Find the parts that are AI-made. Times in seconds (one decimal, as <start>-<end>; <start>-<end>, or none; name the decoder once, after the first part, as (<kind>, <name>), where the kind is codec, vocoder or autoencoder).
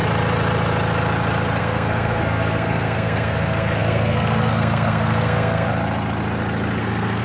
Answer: 1.6-5.7 (codec, SNAC); 6.8-7.2